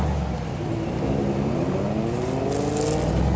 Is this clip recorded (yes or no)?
yes